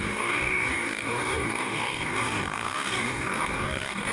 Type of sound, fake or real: fake